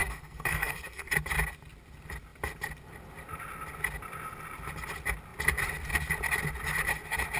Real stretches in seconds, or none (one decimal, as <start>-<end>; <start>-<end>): 1.1-7.4